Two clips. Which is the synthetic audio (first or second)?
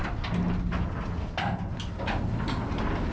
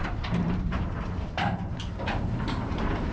second